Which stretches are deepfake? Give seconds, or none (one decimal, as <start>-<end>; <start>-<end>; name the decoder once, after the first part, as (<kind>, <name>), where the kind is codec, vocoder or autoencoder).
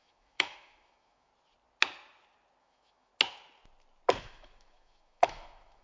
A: 0.0-1.3 (autoencoder, DAC-VAE); 2.6-3.1; 4.2-5.8